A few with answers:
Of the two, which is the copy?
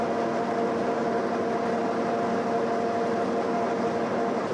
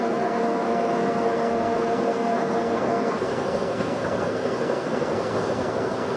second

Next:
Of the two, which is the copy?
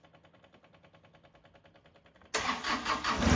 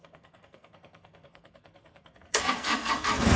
second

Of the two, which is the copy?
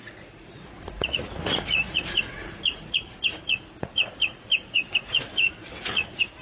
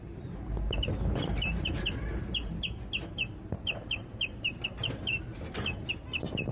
first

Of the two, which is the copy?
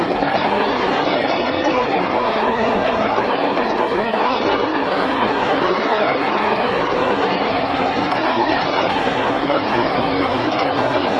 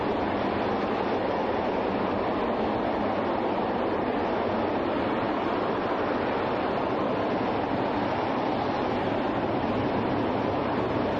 first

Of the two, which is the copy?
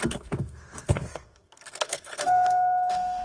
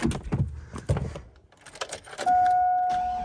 first